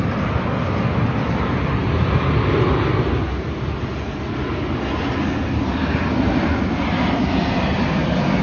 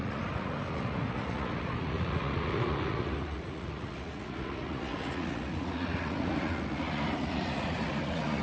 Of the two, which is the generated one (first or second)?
second